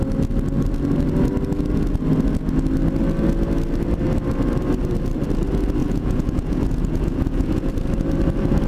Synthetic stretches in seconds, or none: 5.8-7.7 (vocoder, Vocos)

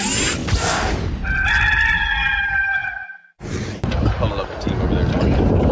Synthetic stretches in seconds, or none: 2.8-3.8 (vocoder, Vocos)

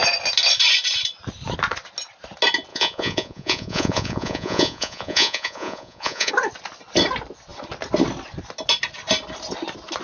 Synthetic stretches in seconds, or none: 2.7-6.3 (vocoder, Vocos)

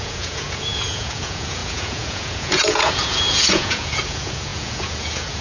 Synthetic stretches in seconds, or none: 0.0-5.4 (vocoder, Vocos)

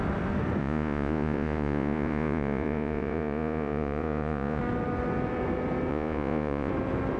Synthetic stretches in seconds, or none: 0.6-4.6 (vocoder, Vocos); 5.9-6.7

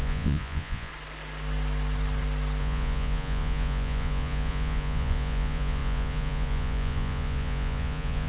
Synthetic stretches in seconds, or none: 0.0-0.9 (vocoder, Vocos); 2.6-8.3

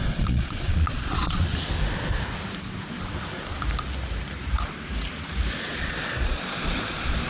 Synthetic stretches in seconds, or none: 0.0-1.5 (vocoder, Vocos); 5.7-7.3